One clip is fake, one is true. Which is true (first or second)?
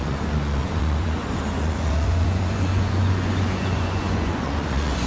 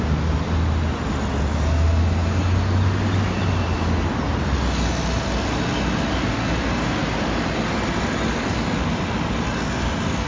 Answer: second